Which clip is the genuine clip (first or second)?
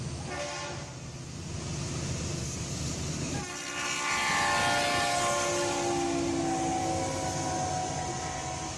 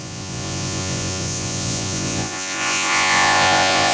first